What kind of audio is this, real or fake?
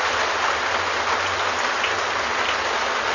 real